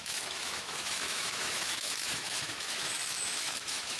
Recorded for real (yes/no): no